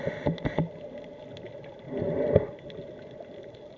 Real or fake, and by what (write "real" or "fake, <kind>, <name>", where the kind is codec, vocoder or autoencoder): real